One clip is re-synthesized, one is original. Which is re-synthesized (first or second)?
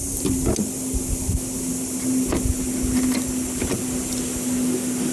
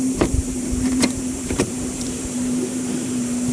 second